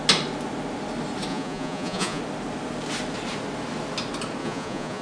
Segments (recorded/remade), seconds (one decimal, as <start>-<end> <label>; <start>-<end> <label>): 0.0-1.3 recorded; 1.3-2.2 remade; 2.2-4.4 recorded; 4.4-5.0 remade